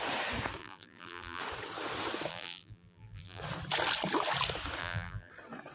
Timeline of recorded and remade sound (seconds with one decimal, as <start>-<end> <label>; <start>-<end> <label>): 0.0-0.6 recorded; 0.6-1.4 remade; 1.4-2.3 recorded; 2.3-3.4 remade; 3.4-4.8 recorded; 4.8-5.3 remade; 5.3-5.7 recorded